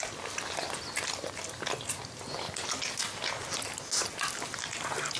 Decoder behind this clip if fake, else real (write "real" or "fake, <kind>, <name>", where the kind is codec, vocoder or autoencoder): real